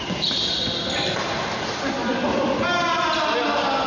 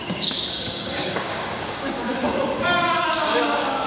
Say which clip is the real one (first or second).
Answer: first